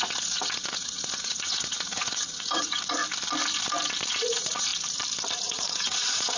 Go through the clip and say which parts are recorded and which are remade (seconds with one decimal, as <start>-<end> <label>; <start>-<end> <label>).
0.0-3.0 remade; 3.0-4.1 recorded; 4.1-4.7 remade; 4.7-5.3 recorded; 5.3-6.4 remade